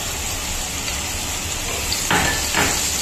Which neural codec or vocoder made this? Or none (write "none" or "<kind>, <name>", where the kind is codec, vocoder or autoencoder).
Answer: none